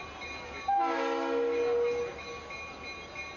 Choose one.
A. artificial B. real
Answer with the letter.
B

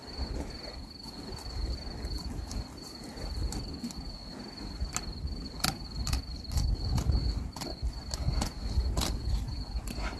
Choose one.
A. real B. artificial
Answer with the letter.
A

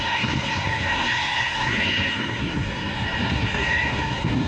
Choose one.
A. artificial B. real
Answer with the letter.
A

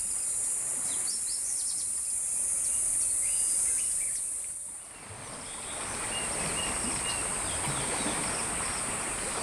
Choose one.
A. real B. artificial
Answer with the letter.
A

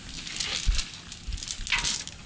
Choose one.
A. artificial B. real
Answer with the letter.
B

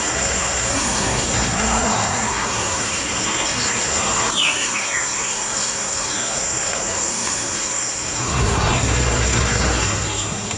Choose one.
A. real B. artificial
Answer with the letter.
B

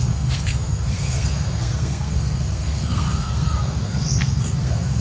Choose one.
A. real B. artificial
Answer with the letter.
B